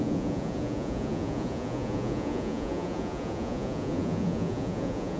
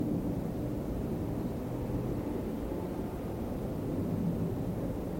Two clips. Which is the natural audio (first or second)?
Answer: second